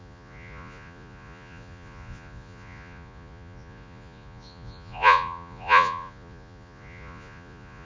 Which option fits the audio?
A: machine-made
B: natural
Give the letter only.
A